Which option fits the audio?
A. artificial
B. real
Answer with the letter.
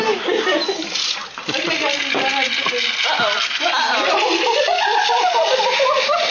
B